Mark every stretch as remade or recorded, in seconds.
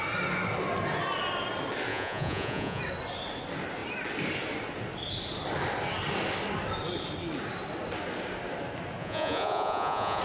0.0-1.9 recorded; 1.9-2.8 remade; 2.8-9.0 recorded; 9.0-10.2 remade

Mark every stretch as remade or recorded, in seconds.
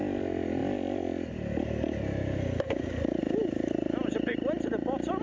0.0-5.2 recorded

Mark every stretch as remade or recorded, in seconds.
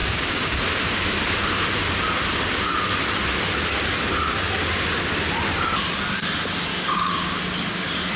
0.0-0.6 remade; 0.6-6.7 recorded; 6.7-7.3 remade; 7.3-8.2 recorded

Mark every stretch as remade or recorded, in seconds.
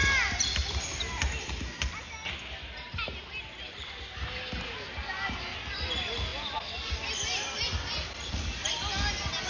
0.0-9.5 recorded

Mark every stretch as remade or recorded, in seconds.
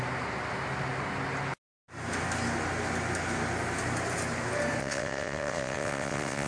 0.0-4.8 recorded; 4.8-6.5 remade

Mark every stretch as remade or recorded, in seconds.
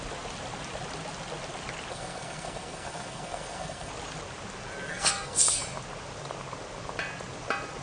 0.0-1.9 recorded; 1.9-3.9 remade; 3.9-4.9 recorded; 4.9-5.6 remade; 5.6-7.8 recorded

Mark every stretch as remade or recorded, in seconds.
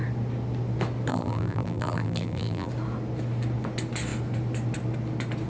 0.0-1.1 recorded; 1.1-2.7 remade; 2.7-5.5 recorded